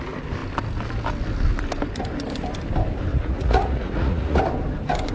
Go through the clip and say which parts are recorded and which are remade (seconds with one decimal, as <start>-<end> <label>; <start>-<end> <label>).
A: 0.0-3.1 recorded; 3.1-4.4 remade; 4.4-5.1 recorded